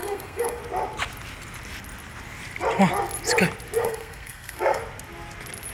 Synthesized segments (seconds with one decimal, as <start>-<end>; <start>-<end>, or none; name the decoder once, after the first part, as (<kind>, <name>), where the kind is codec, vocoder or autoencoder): 0.0-0.6 (codec, SNAC); 3.8-4.8